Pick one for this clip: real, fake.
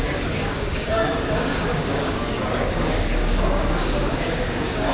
fake